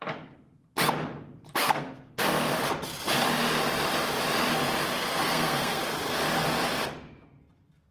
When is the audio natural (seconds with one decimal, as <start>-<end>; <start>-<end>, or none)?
0.0-1.6; 2.2-5.2; 5.8-7.9